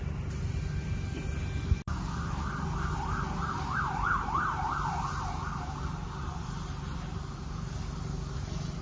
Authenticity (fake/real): real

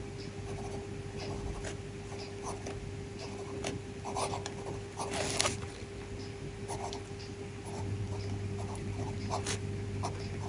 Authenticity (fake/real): real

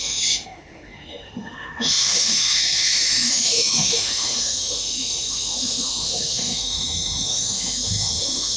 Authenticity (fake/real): fake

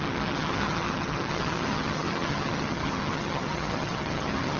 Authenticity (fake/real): fake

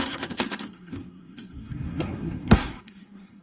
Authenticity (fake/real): fake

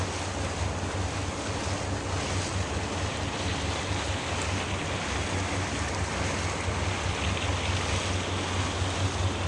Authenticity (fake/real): real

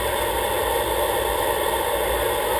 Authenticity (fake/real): real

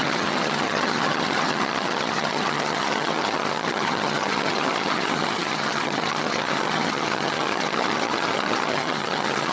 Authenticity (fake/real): fake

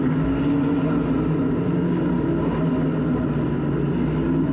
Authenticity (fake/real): real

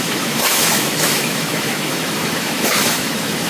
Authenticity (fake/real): fake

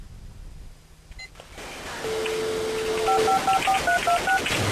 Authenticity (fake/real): real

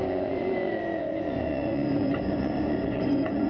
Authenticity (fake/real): fake